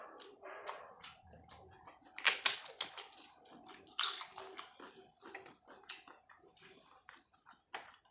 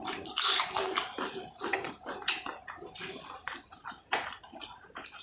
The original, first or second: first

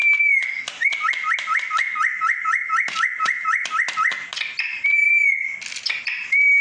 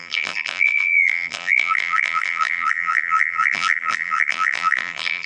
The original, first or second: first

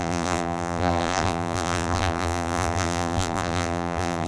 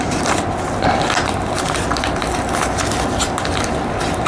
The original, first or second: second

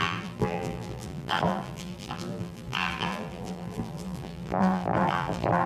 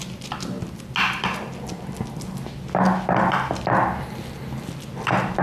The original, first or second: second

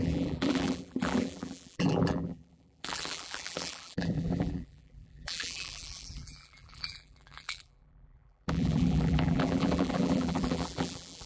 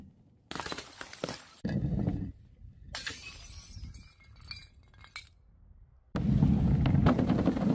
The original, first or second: second